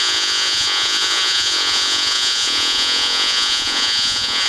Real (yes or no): no